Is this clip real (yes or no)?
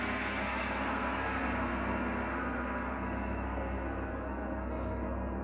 no